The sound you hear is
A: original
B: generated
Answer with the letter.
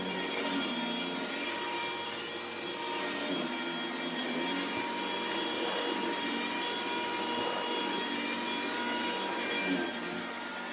A